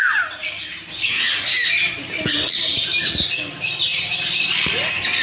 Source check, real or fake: real